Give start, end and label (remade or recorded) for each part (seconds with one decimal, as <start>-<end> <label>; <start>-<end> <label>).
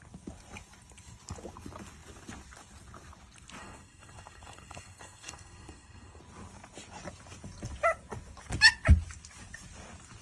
0.0-3.6 recorded; 3.6-6.2 remade; 6.2-10.2 recorded